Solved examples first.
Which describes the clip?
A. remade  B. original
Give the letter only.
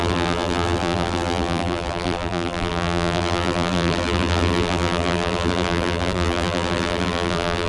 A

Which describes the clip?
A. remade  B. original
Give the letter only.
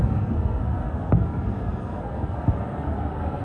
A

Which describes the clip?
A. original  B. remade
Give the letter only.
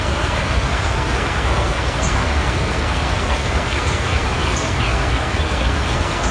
B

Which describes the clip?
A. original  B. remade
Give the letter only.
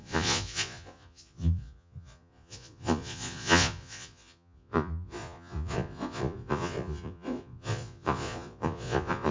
B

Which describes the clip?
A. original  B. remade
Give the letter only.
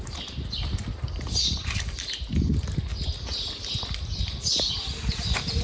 A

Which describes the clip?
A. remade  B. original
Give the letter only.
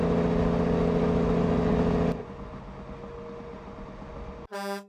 B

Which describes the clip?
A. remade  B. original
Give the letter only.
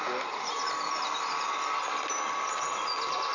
B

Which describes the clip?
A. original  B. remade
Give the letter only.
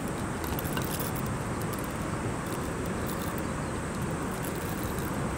A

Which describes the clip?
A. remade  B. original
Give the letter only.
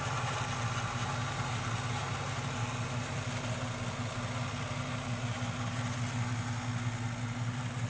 B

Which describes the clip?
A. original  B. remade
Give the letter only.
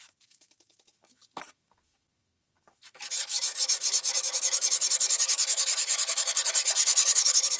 B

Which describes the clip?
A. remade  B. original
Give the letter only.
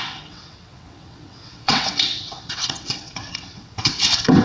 A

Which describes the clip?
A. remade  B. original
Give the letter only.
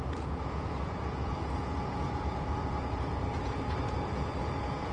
A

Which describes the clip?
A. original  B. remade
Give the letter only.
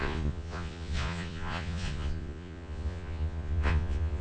B